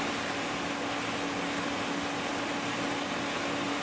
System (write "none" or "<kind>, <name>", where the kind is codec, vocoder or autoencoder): none